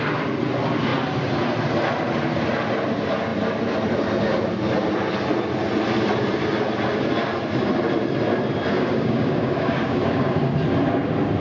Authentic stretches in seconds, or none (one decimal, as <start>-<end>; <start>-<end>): 0.0-8.7; 10.5-11.4